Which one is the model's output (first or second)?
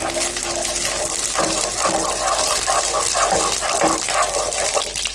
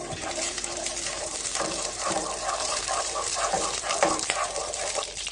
second